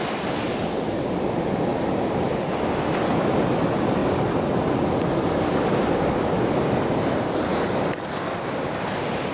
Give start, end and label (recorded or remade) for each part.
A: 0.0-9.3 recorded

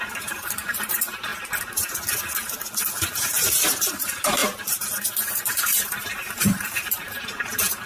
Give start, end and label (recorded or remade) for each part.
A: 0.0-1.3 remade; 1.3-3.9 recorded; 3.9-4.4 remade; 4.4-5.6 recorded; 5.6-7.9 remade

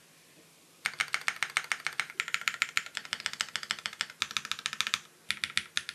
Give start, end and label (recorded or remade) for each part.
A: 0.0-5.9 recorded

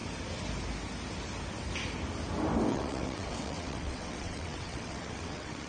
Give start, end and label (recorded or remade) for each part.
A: 0.0-2.7 recorded; 2.7-5.7 remade

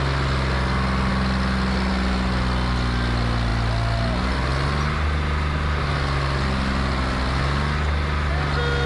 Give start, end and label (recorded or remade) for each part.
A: 0.0-8.9 recorded

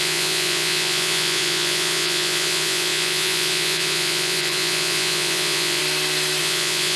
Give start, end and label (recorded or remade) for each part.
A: 0.0-5.8 remade; 5.8-6.4 recorded; 6.4-7.0 remade